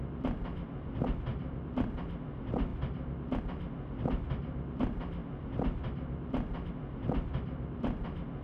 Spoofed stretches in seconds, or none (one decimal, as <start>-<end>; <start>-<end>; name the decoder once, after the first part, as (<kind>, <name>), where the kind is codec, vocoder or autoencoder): 0.0-2.7 (vocoder, BigVGAN v2); 3.4-8.4